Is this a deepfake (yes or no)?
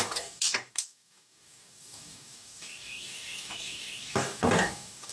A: yes